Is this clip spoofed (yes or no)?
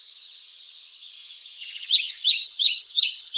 yes